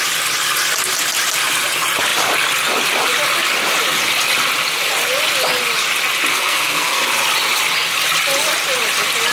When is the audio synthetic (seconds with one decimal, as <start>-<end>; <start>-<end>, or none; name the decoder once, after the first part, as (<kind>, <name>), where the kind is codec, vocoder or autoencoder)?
6.3-7.0 (codec, SNAC)